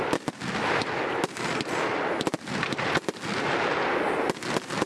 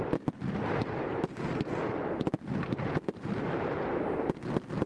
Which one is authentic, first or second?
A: first